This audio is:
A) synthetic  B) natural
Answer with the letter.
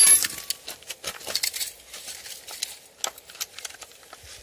B